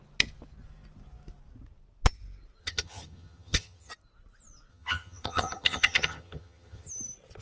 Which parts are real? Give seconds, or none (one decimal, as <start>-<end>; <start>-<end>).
0.0-2.6; 3.9-4.7; 6.9-7.4